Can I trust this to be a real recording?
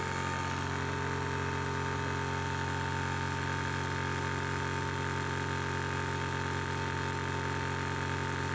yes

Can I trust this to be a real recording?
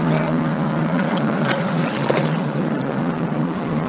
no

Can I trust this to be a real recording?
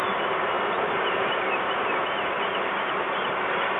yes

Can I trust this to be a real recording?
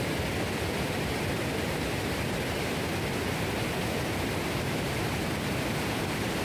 yes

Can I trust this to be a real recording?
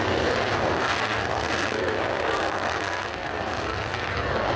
no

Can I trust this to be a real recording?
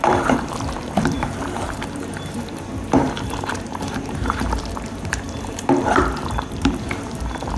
no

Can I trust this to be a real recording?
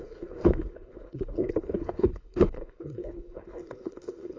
no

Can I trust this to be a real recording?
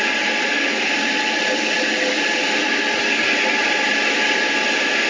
yes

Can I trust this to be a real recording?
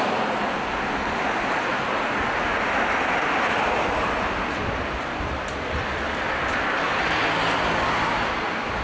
yes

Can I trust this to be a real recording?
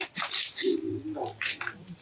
yes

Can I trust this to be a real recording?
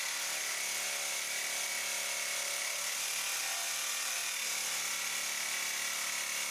yes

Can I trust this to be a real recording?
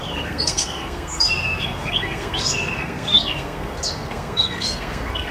no